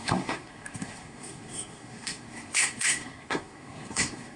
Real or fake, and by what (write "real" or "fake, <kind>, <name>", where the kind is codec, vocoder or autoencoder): fake, codec, SNAC